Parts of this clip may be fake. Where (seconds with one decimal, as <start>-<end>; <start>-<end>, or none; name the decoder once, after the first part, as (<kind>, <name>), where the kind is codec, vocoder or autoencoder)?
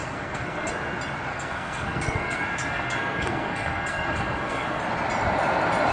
0.0-0.7 (codec, SNAC); 1.3-4.8